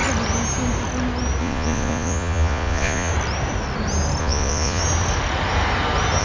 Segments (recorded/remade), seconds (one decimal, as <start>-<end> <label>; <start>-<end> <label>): 0.0-1.4 recorded; 1.4-3.1 remade; 3.1-4.2 recorded; 4.2-4.8 remade; 4.8-6.2 recorded